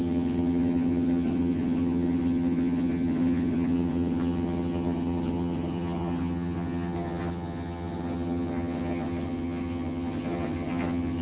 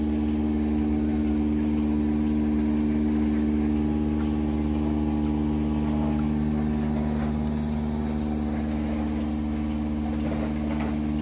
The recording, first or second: second